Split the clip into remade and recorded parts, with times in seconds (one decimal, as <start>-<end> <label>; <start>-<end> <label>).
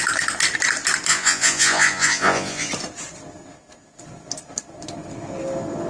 0.0-1.1 recorded; 1.1-2.7 remade; 2.7-5.9 recorded